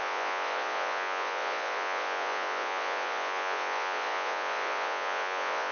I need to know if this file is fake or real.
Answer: fake